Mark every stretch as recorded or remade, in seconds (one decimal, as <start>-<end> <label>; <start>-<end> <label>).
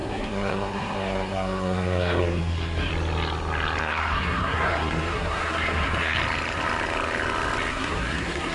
0.0-2.9 remade; 2.9-3.8 recorded; 3.8-6.2 remade; 6.2-7.7 recorded; 7.7-8.5 remade